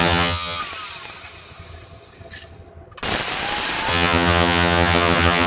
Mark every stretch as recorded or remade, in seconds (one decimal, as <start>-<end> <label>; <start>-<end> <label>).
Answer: 0.0-0.6 remade; 0.6-3.9 recorded; 3.9-5.5 remade